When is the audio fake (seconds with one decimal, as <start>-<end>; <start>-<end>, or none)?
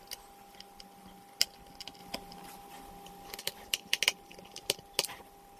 none